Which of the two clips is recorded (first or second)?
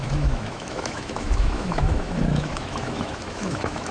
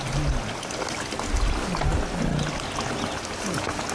second